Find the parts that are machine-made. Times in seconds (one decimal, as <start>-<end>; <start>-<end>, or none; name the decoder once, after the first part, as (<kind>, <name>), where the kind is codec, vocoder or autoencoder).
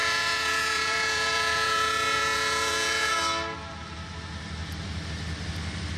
0.0-3.2 (vocoder, Vocos)